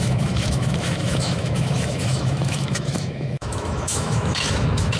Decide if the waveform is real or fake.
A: fake